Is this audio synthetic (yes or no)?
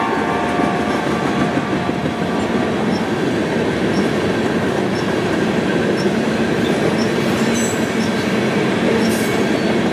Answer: no